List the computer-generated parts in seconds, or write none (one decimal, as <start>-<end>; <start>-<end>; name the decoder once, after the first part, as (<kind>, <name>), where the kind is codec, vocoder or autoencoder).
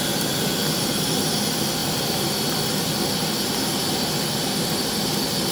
none